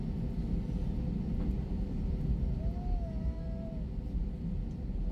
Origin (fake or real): real